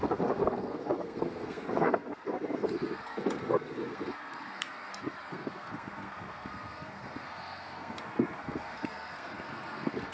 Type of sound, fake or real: fake